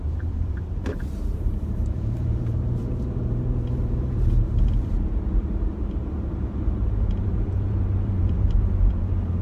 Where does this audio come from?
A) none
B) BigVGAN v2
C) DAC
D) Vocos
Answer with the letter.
B